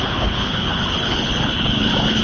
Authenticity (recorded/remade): remade